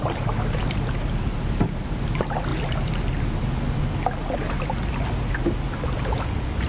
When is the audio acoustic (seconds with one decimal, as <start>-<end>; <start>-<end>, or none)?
0.0-6.7